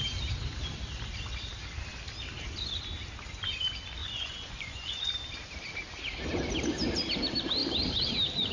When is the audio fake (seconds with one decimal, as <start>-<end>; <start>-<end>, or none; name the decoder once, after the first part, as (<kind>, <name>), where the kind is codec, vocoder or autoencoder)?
4.0-5.1 (vocoder, Vocos)